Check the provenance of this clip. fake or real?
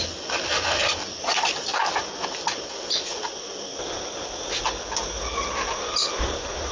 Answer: real